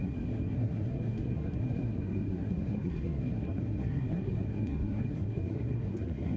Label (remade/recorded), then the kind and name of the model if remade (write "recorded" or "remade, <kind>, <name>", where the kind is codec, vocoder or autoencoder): remade, codec, SNAC